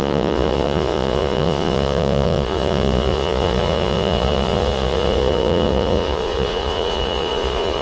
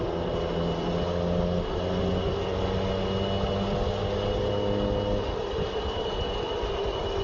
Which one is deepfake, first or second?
first